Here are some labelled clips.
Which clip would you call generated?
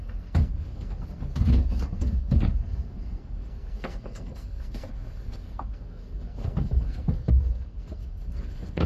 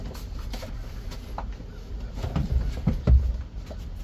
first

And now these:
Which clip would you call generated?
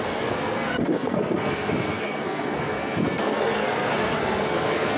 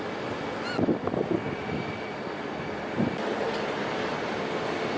first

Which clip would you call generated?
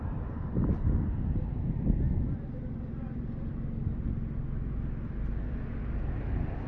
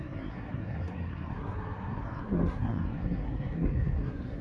second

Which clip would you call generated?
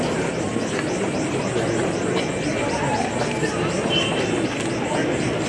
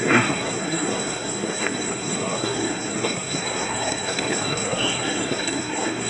second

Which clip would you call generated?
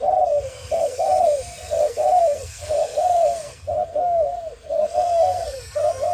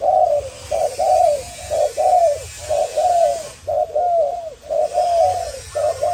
first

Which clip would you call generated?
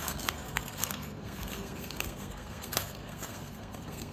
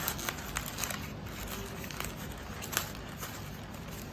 first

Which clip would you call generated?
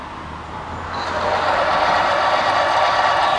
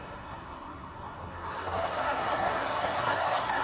second